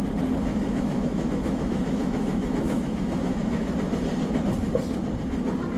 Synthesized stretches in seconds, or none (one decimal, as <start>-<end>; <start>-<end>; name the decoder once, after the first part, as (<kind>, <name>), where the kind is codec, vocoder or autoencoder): 0.5-3.7 (autoencoder, DAC-VAE)